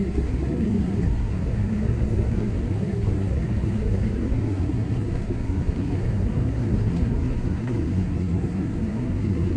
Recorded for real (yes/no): no